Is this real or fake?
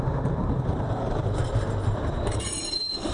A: fake